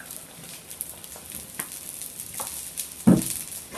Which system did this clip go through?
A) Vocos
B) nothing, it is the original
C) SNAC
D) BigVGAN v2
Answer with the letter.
B